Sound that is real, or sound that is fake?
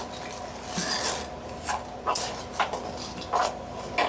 real